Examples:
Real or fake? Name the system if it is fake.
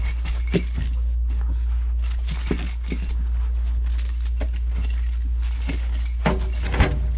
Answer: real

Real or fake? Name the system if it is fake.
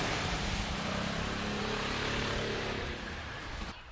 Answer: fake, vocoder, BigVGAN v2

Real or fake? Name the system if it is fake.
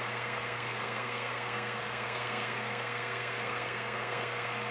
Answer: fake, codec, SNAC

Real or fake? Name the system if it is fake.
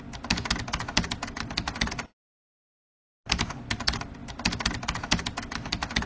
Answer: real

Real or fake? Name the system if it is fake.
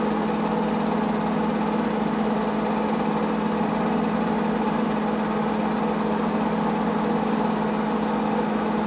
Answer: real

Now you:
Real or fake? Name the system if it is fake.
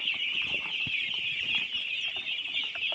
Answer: fake, vocoder, BigVGAN v2